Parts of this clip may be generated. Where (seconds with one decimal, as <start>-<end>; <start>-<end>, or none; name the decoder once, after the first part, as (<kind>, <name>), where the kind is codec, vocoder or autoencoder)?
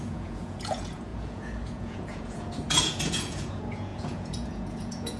0.0-5.2 (vocoder, Vocos)